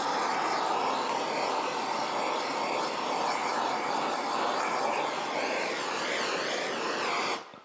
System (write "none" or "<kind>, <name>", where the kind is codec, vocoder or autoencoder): none